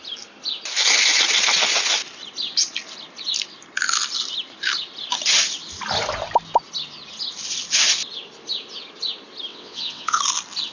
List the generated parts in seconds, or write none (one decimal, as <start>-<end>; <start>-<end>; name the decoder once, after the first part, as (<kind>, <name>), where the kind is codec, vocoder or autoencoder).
9.5-10.2 (vocoder, WaveNeXt)